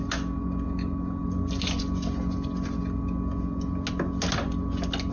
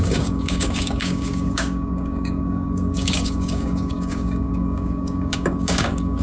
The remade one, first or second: second